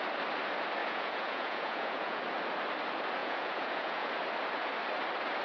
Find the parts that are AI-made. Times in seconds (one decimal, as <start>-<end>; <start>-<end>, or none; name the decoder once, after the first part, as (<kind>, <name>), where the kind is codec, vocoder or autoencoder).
0.8-2.2 (vocoder, Vocos); 3.2-4.1

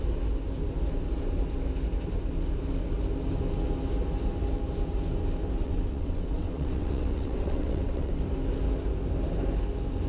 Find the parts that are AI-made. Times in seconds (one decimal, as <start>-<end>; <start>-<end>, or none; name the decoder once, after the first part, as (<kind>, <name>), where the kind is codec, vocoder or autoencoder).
5.6-8.2 (vocoder, WaveNeXt)